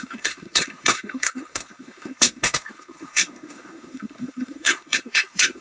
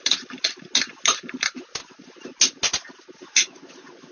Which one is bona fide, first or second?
second